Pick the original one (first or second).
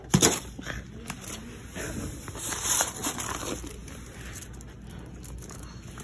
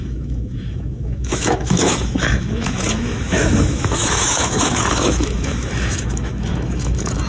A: first